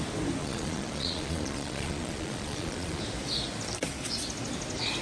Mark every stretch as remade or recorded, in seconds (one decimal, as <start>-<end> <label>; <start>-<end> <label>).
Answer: 0.0-0.4 recorded; 0.4-3.0 remade; 3.0-5.0 recorded